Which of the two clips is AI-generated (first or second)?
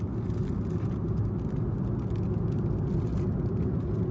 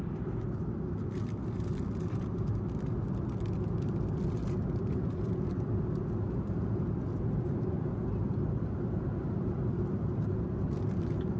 second